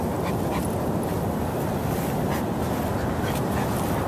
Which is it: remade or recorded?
recorded